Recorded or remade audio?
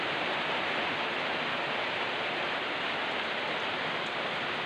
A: remade